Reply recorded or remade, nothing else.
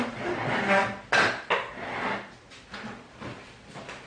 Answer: recorded